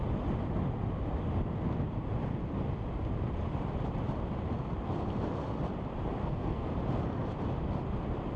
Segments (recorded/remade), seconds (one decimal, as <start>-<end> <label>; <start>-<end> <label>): 0.0-6.2 recorded; 6.2-6.7 remade; 6.7-8.4 recorded